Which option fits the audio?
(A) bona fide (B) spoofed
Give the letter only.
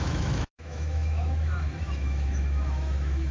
B